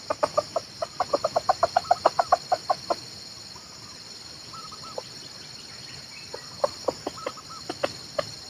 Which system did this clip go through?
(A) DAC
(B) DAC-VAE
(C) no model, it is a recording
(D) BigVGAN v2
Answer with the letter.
C